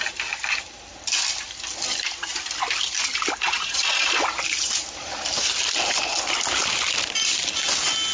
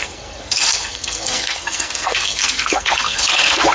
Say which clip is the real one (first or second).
first